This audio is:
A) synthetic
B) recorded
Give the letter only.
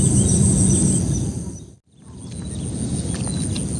B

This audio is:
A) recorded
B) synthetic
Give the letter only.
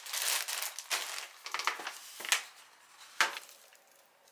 A